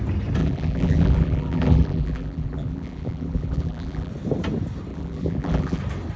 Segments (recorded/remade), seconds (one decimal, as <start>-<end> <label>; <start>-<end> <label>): 0.0-0.4 recorded; 0.4-4.1 remade; 4.1-4.9 recorded; 4.9-5.8 remade; 5.8-6.2 recorded